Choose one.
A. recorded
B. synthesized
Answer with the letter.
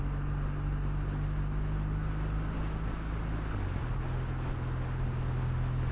A